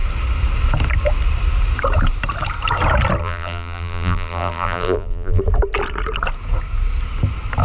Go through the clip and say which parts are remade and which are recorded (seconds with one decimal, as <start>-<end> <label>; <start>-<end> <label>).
0.0-3.2 recorded; 3.2-5.4 remade; 5.4-7.6 recorded

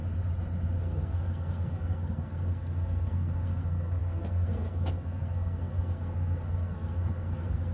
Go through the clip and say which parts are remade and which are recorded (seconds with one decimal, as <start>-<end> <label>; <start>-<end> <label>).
0.0-0.8 recorded; 0.8-7.7 remade

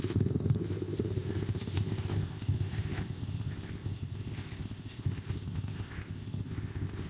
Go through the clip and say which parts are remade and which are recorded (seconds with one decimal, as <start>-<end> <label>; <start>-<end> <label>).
0.0-7.1 remade

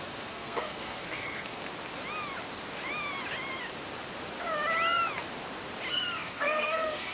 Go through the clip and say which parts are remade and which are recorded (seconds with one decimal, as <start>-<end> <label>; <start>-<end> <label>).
0.0-1.6 remade; 1.6-5.9 recorded; 5.9-7.1 remade

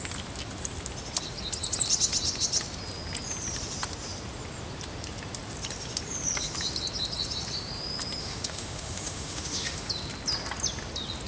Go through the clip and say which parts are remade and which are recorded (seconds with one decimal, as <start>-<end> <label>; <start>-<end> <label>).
0.0-8.2 recorded; 8.2-9.9 remade; 9.9-11.3 recorded